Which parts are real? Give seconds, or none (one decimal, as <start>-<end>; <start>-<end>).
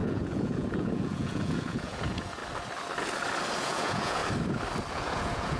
2.4-3.6; 4.2-4.9